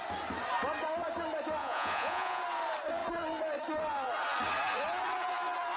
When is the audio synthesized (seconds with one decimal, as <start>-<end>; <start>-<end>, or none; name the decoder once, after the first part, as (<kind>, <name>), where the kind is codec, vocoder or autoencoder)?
1.6-2.4 (vocoder, Vocos)